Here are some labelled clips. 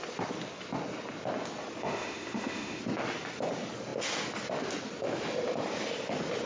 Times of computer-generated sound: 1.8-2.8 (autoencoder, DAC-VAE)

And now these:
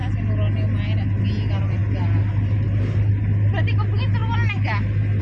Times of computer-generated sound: none

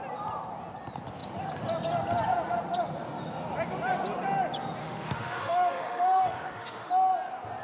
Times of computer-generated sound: 4.8-6.9 (autoencoder, DAC-VAE)

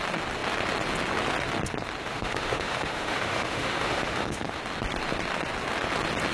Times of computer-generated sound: 2.0-4.6 (autoencoder, DAC-VAE)

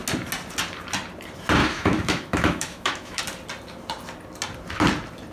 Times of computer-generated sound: 1.6-3.2 (autoencoder, DAC-VAE)

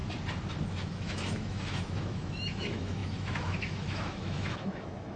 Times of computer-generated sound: 0.7-5.2 (autoencoder, DAC-VAE)